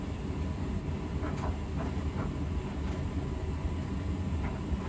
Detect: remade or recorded recorded